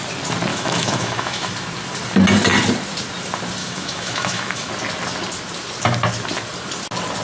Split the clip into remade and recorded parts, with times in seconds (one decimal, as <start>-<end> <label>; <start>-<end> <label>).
0.0-0.5 recorded; 0.5-1.5 remade; 1.5-3.6 recorded; 3.6-4.7 remade; 4.7-7.2 recorded